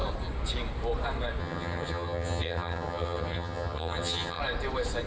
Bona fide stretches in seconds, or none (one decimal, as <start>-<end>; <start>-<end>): 0.0-1.4; 4.4-5.1